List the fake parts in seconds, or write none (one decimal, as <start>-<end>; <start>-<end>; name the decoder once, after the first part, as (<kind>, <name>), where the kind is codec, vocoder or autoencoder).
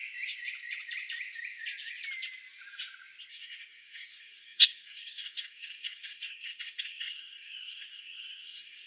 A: 3.3-8.9 (codec, SNAC)